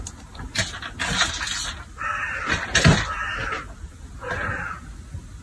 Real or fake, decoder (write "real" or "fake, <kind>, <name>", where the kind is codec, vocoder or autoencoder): real